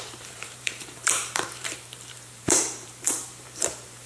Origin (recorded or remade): remade